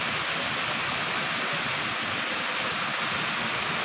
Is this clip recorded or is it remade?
recorded